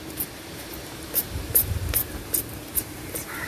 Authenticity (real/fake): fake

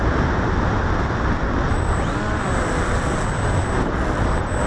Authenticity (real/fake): real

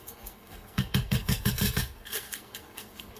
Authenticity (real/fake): fake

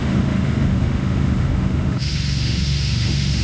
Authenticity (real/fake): fake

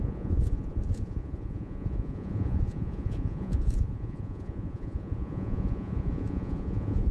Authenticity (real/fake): fake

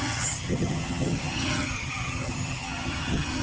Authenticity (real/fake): fake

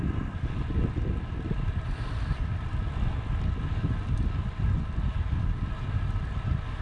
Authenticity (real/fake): real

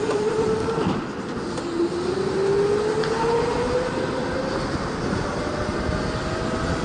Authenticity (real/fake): real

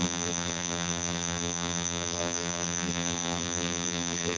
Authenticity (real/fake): fake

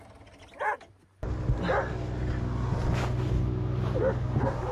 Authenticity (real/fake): real